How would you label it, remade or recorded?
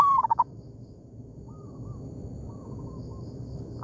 remade